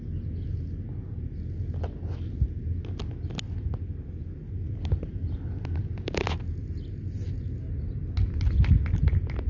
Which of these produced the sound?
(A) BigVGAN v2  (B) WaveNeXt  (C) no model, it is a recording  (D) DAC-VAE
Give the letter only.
C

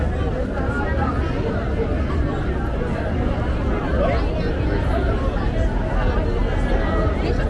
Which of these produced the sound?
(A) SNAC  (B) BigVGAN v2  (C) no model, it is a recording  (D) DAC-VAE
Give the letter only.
C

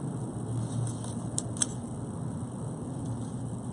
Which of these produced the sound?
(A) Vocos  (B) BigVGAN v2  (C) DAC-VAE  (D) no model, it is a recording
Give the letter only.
D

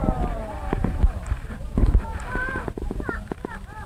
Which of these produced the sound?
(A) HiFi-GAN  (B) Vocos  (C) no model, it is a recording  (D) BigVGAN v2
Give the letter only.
D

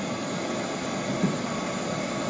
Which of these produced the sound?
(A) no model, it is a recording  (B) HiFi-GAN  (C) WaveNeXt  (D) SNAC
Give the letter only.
A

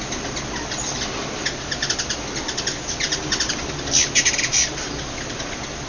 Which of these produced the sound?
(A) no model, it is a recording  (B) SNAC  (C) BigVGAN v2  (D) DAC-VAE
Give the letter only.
A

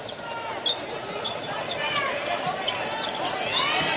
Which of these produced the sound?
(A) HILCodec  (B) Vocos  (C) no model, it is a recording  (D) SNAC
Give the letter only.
C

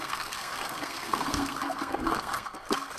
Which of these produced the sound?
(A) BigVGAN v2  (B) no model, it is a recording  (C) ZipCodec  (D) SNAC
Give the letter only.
D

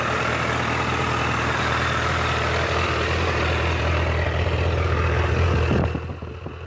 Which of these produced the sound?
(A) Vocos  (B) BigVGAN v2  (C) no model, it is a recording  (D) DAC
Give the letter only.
C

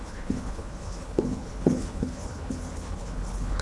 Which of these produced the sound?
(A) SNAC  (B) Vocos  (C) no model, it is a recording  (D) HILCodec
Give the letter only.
D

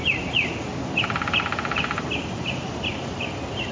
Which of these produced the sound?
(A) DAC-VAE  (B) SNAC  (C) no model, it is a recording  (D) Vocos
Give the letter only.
C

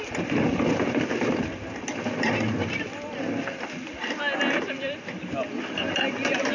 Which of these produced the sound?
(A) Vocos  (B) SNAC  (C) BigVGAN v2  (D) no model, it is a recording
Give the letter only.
D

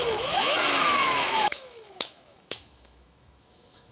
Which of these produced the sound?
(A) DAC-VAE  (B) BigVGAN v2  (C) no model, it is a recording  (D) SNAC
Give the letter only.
A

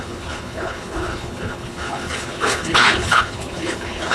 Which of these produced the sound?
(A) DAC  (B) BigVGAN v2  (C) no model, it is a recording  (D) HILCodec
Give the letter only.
D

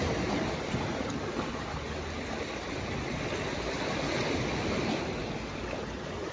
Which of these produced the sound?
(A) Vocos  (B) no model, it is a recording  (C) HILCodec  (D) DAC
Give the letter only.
B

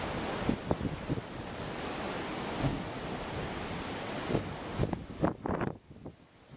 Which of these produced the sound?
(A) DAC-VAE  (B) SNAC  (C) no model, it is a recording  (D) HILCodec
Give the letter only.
C